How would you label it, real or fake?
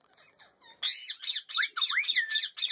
real